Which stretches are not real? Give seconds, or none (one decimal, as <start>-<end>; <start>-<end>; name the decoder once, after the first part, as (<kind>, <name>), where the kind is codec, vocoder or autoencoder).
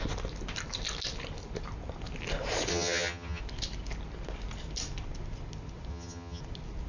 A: 2.7-3.4 (vocoder, HiFi-GAN); 5.9-6.4